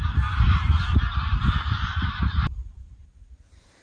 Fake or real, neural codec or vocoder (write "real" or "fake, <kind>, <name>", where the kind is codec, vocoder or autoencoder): fake, vocoder, BigVGAN v2